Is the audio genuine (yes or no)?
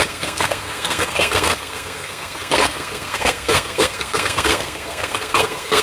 no